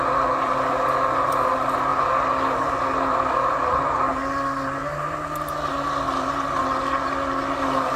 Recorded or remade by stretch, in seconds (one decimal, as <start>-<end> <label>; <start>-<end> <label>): 0.0-4.8 recorded; 4.8-5.5 remade; 5.5-8.0 recorded